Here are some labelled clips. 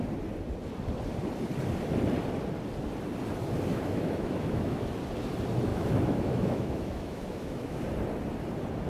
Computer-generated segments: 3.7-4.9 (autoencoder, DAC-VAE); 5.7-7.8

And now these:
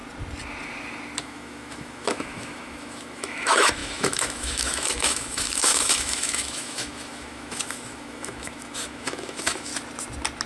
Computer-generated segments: 1.2-9.7 (autoencoder, DAC-VAE)

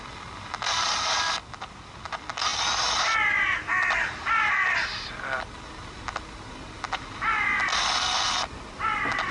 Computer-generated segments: none

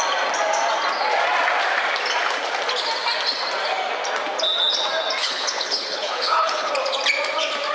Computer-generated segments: 5.2-6.7 (codec, HILCodec)

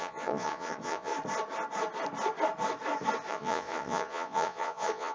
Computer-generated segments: 0.0-1.1 (vocoder, Vocos); 3.3-5.1

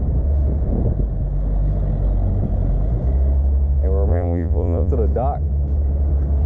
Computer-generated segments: 4.1-4.9 (vocoder, Vocos)

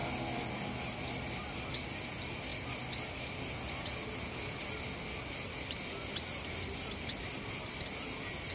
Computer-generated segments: none

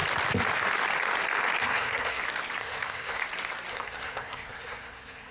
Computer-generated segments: 1.6-2.2 (codec, SNAC); 2.6-3.2; 3.7-5.3